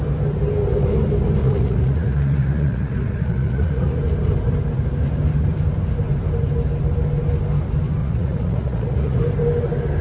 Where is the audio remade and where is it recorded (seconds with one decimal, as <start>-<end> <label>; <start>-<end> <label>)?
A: 0.0-1.4 recorded; 1.4-4.0 remade; 4.0-8.0 recorded; 8.0-9.2 remade; 9.2-10.0 recorded